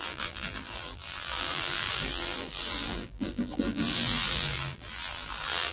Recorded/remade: remade